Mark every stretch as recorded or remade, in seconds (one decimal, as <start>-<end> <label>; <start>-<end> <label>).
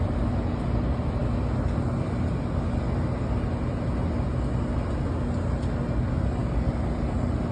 0.0-7.5 recorded